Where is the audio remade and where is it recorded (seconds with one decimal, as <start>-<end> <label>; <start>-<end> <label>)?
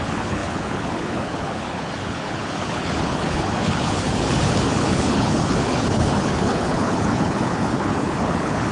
0.0-8.7 remade